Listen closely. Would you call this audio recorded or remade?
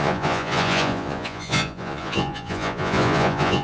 remade